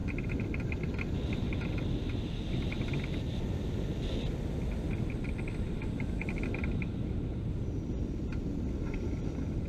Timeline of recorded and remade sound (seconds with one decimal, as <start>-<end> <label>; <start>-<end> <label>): 0.0-9.7 recorded

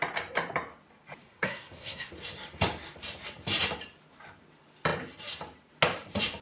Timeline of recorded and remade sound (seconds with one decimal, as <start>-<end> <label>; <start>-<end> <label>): 0.0-1.2 recorded; 1.2-2.1 remade; 2.1-6.4 recorded